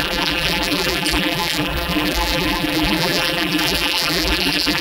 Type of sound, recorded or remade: remade